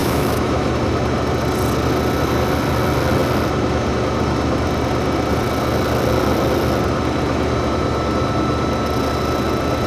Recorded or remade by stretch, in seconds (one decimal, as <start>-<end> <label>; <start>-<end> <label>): 0.0-0.7 remade; 0.7-9.9 recorded